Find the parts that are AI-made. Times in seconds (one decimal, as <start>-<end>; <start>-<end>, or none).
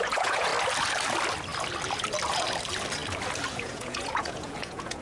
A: 0.0-0.5; 3.5-5.0